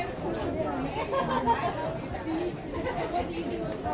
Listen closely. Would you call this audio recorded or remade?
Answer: recorded